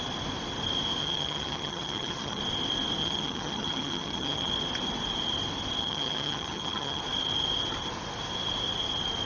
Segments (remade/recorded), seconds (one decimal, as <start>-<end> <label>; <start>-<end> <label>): 0.0-1.0 recorded; 1.0-2.4 remade; 2.4-3.0 recorded; 3.0-4.5 remade; 4.5-5.8 recorded; 5.8-7.0 remade; 7.0-9.3 recorded